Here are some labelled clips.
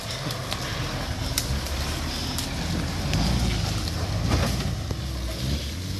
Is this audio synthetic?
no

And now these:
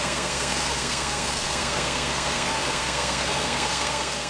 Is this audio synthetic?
yes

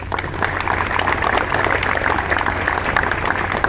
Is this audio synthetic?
no